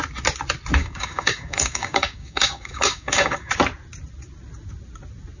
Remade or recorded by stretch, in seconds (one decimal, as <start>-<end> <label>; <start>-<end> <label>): 0.0-0.8 recorded; 0.8-3.5 remade; 3.5-5.4 recorded